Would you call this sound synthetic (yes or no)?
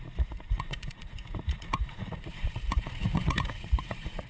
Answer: yes